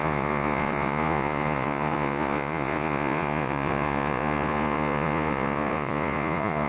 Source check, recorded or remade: remade